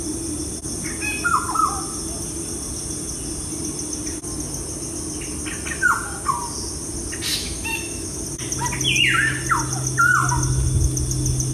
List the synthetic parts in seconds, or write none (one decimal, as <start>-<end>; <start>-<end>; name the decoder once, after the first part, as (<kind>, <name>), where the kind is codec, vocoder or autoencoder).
7.3-8.2 (autoencoder, DAC-VAE)